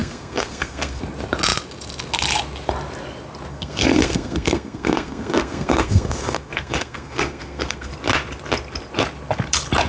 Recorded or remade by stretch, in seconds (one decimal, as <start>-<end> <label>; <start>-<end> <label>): 0.0-1.0 remade; 1.0-3.5 recorded; 3.5-7.9 remade; 7.9-9.9 recorded